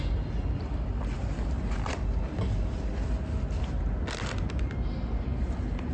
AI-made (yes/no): no